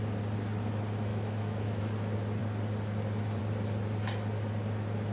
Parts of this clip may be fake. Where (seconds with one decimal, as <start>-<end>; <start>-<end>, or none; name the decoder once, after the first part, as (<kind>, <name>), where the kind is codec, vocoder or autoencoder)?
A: 1.1-1.8 (autoencoder, DAC-VAE)